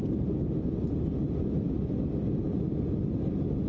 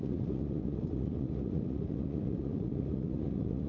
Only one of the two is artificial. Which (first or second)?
second